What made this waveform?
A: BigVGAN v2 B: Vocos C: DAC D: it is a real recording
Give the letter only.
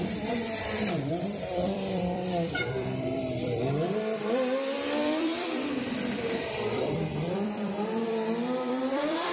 A